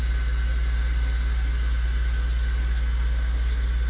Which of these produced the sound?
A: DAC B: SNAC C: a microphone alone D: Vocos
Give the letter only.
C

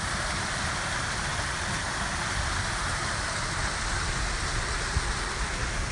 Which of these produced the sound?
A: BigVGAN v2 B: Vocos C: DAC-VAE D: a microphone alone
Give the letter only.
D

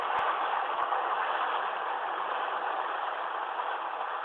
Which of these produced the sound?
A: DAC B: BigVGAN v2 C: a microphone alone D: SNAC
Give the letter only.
C